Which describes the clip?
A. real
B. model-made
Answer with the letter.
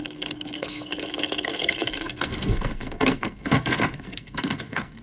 B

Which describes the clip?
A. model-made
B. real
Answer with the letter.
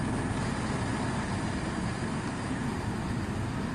B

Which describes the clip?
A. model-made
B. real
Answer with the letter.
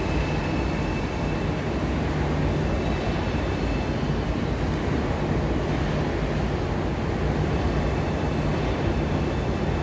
B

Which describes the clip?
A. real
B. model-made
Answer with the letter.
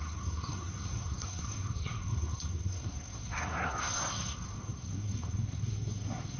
B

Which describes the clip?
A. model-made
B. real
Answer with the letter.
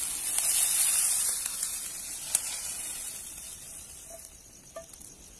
B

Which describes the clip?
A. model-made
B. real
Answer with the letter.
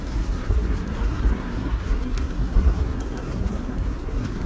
A